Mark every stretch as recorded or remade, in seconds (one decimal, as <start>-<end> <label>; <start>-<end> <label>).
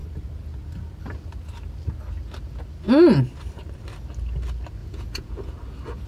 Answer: 0.0-4.8 recorded; 4.8-5.5 remade; 5.5-6.1 recorded